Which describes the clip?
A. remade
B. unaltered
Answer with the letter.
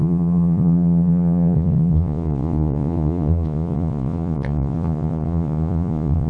A